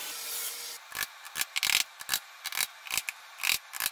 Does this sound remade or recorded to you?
recorded